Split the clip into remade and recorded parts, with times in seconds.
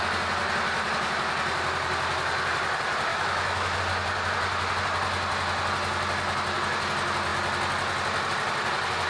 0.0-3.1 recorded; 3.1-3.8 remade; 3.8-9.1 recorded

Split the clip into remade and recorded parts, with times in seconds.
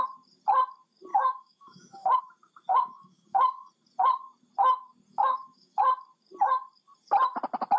0.0-1.1 recorded; 1.1-2.2 remade; 2.2-2.7 recorded; 2.7-3.7 remade; 3.7-5.1 recorded; 5.1-5.8 remade; 5.8-7.8 recorded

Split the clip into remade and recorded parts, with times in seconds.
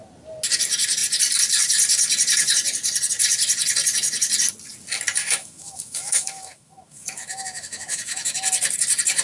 0.0-5.2 recorded; 5.2-8.4 remade; 8.4-9.2 recorded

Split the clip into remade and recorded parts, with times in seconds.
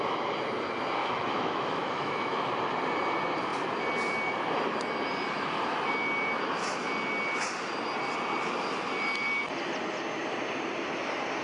0.0-1.0 recorded; 1.0-2.5 remade; 2.5-11.4 recorded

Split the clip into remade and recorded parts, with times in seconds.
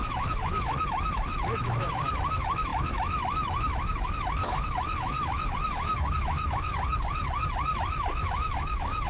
0.0-6.7 remade; 6.7-7.8 recorded; 7.8-9.1 remade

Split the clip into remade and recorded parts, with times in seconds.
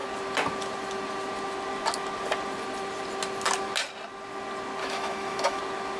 0.0-4.8 recorded; 4.8-5.6 remade; 5.6-6.0 recorded